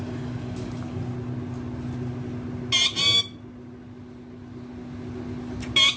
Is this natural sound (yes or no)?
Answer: yes